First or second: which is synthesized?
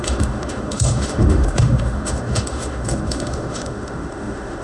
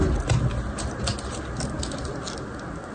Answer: first